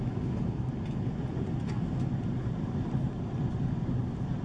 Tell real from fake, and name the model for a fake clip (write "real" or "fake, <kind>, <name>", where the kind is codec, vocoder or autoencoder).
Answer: real